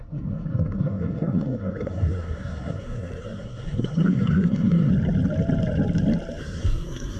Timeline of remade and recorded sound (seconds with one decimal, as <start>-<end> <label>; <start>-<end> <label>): 0.0-4.9 remade; 4.9-6.4 recorded; 6.4-7.2 remade